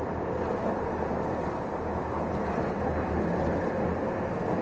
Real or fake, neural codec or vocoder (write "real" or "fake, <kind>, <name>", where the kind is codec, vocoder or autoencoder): real